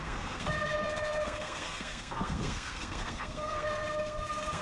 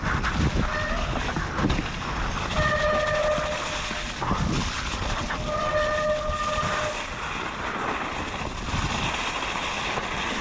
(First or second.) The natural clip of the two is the second